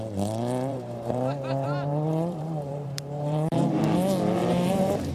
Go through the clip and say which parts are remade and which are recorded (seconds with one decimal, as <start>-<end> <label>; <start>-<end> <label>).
0.0-0.7 recorded; 0.7-3.8 remade; 3.8-4.4 recorded; 4.4-5.1 remade